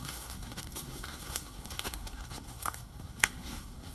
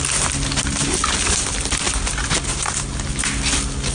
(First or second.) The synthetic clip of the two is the first